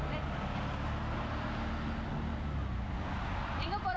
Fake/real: real